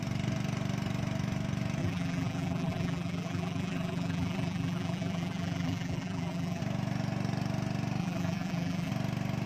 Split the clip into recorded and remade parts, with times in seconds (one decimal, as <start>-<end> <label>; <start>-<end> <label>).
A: 0.0-1.8 recorded; 1.8-6.6 remade; 6.6-8.0 recorded; 8.0-8.9 remade; 8.9-9.5 recorded